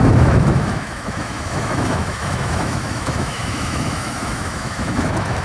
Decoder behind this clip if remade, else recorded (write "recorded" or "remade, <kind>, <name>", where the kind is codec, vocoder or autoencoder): remade, autoencoder, DAC-VAE